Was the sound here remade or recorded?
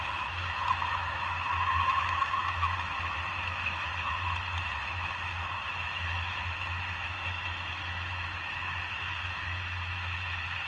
remade